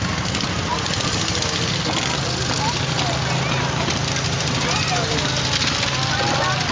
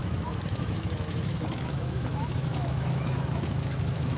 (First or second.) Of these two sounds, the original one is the first